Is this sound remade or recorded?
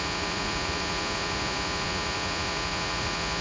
remade